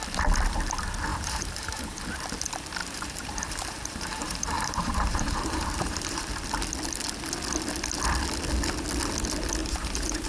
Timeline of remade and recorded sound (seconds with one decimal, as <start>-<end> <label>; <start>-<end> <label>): 0.0-1.1 recorded; 1.1-2.0 remade; 2.0-2.8 recorded; 2.8-6.3 remade; 6.3-9.6 recorded; 9.6-10.3 remade